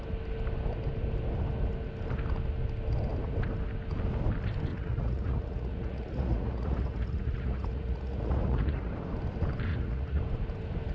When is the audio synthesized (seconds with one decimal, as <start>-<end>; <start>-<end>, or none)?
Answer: 4.7-8.9; 9.7-10.2